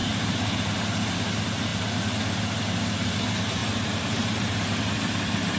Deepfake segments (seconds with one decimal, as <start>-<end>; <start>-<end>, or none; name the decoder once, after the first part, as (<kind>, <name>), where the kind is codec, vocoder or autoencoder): 0.0-0.7 (vocoder, BigVGAN v2); 3.6-4.7